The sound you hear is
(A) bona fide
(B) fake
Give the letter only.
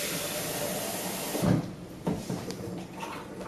B